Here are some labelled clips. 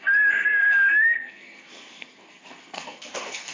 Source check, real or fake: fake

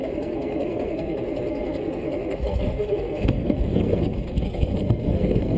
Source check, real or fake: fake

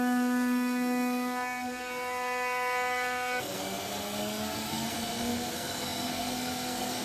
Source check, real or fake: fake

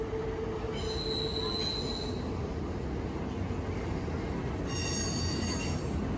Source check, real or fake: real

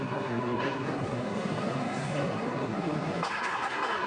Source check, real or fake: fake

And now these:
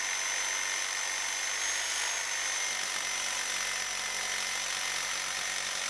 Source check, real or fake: real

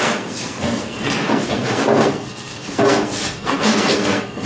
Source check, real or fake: fake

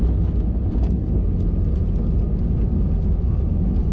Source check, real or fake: real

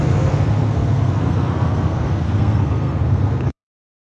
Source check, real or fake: fake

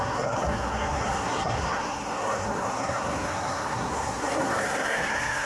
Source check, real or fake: fake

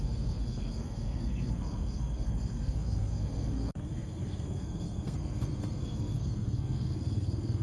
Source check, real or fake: fake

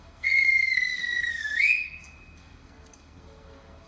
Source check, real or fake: fake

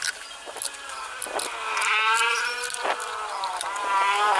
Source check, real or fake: real